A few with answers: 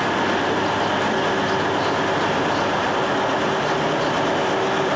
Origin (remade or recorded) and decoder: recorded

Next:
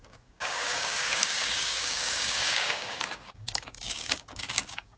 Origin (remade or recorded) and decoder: remade, codec, DAC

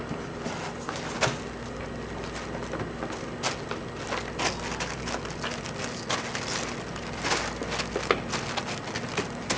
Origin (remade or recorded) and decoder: recorded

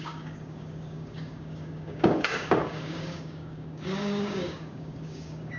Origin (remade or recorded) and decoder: remade, codec, DAC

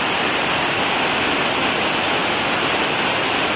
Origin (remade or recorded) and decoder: recorded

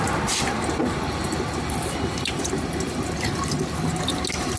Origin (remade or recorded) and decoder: recorded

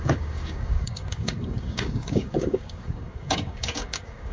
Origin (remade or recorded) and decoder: remade, codec, DAC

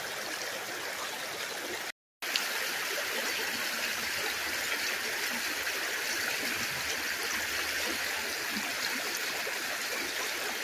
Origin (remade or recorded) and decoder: recorded